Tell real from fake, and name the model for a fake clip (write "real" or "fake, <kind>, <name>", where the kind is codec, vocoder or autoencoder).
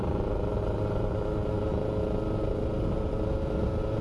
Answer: real